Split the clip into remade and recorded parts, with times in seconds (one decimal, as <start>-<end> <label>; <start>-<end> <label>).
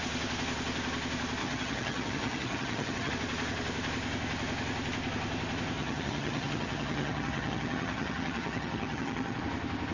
0.0-1.4 recorded; 1.4-3.1 remade; 3.1-5.8 recorded; 5.8-9.4 remade; 9.4-9.9 recorded